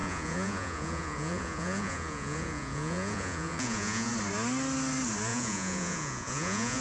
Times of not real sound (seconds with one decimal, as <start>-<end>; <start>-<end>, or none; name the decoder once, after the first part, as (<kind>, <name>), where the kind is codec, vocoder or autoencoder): 0.0-4.1 (vocoder, Vocos); 5.3-6.8